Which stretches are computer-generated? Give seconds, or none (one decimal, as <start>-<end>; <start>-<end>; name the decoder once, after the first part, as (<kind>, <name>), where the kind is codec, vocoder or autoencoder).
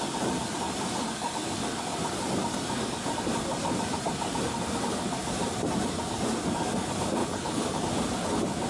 7.2-7.8 (codec, HILCodec)